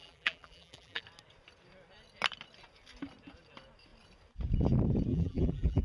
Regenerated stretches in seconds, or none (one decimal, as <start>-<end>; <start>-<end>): 0.0-1.0; 5.1-5.8